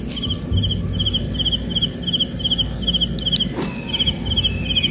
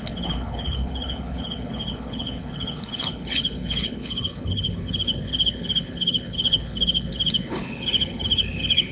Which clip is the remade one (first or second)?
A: second